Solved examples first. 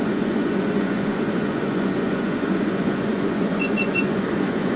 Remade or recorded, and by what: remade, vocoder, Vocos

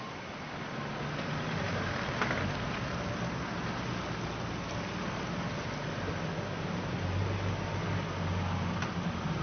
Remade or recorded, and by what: recorded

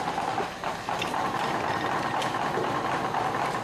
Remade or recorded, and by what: recorded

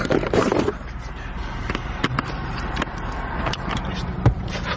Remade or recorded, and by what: remade, vocoder, BigVGAN v2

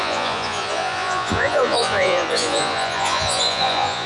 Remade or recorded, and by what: remade, vocoder, Vocos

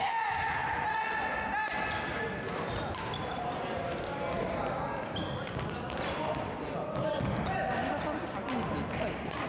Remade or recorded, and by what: recorded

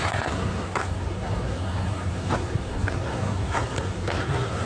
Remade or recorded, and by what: remade, codec, SNAC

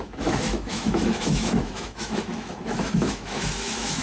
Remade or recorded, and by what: remade, autoencoder, DAC-VAE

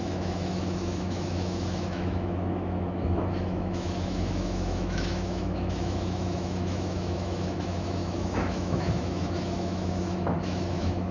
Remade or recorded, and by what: remade, autoencoder, DAC-VAE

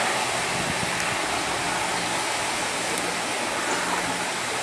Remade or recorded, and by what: recorded